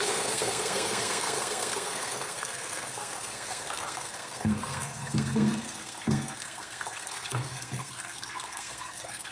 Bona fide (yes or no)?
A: no